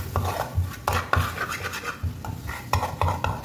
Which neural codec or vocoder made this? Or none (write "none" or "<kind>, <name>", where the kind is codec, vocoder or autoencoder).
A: none